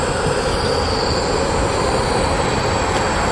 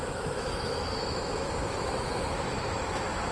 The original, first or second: first